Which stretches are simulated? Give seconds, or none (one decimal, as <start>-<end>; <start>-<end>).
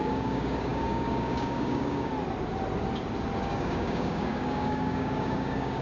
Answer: 0.0-2.1; 3.4-5.8